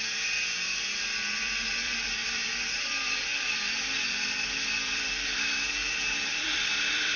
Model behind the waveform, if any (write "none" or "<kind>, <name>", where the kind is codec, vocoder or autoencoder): vocoder, BigVGAN v2